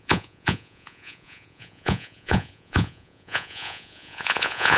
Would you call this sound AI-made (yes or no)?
yes